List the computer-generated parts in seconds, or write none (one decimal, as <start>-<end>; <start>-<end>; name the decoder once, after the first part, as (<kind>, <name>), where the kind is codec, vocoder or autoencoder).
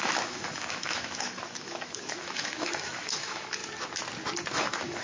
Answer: 0.0-3.6 (autoencoder, DAC-VAE); 4.5-5.0